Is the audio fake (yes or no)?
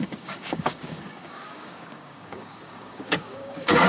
yes